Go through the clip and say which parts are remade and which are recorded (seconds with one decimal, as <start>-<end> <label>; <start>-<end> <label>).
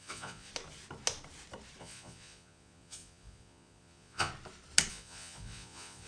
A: 0.0-0.5 remade; 0.5-1.8 recorded; 1.8-4.3 remade; 4.3-4.9 recorded; 4.9-6.1 remade